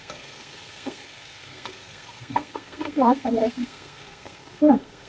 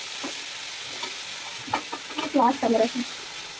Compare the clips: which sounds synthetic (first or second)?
first